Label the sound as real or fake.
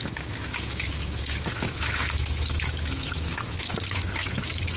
fake